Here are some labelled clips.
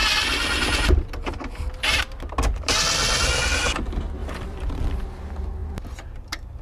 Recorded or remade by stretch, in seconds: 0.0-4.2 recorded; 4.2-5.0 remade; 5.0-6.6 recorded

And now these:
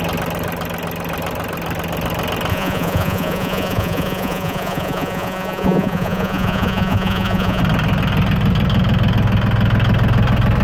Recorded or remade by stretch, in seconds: 0.0-2.5 recorded; 2.5-7.6 remade; 7.6-10.6 recorded

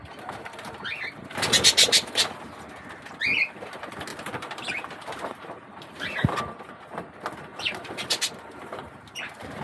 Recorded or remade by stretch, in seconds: 0.0-1.3 remade; 1.3-4.1 recorded; 4.1-6.4 remade; 6.4-7.5 recorded; 7.5-9.6 remade

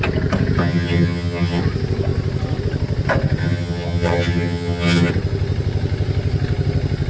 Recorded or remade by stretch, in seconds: 0.0-0.6 recorded; 0.6-1.6 remade; 1.6-3.4 recorded; 3.4-5.1 remade; 5.1-7.1 recorded